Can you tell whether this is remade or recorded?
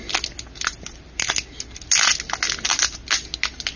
recorded